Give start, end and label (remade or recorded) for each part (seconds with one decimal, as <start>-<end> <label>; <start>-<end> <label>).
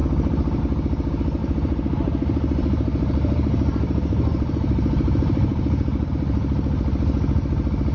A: 0.0-1.4 recorded; 1.4-6.1 remade; 6.1-7.9 recorded